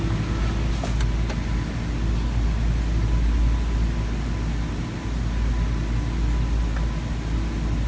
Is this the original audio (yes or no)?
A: yes